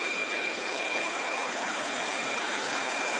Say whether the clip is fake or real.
fake